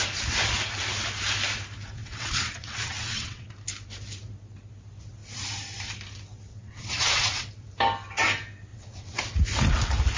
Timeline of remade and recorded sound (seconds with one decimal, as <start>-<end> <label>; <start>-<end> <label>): 0.0-2.0 recorded; 2.0-3.5 remade; 3.5-6.5 recorded; 6.5-7.5 remade; 7.5-8.7 recorded; 8.7-9.2 remade; 9.2-10.2 recorded